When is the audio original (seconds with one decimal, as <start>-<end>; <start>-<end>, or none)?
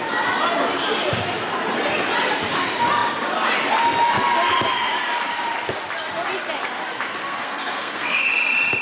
0.0-7.2; 8.3-8.8